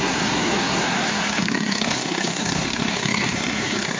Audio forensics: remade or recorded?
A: remade